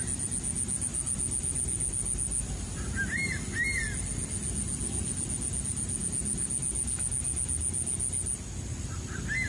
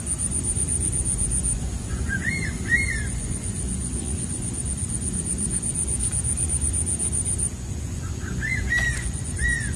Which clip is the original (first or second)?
first